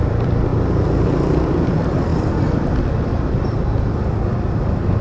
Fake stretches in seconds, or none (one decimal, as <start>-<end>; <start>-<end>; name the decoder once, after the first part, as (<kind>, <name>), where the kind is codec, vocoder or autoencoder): 0.0-0.5 (vocoder, BigVGAN v2); 1.4-5.0